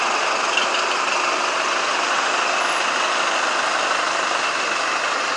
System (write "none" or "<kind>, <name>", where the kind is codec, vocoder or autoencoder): none